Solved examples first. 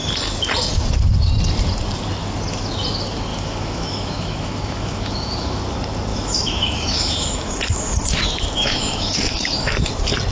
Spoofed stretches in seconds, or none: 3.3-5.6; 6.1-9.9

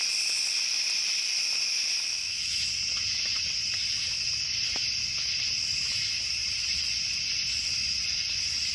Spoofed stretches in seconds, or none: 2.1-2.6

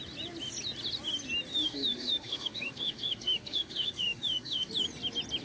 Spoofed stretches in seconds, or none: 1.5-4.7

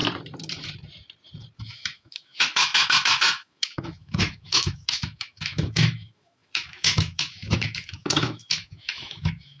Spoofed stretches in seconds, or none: 1.6-9.6